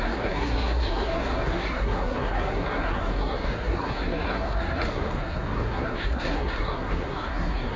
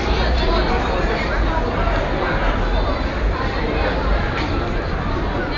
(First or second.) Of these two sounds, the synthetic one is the first